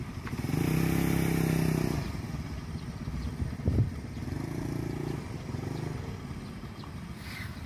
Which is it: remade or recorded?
recorded